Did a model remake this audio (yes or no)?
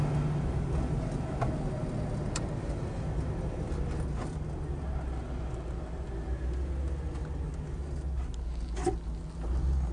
no